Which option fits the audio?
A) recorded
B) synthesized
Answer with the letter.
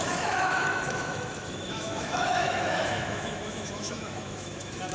B